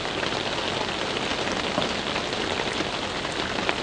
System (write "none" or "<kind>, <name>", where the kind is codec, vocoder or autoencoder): none